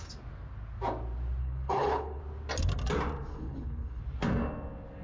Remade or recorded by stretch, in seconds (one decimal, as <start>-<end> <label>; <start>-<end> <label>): 0.0-1.4 recorded; 1.4-2.2 remade; 2.2-3.3 recorded; 3.3-4.0 remade; 4.0-5.0 recorded